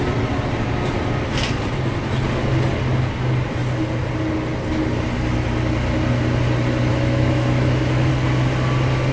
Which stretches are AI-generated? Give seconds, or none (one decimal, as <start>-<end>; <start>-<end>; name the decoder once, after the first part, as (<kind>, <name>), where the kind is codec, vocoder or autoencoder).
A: 6.9-8.1 (autoencoder, DAC-VAE)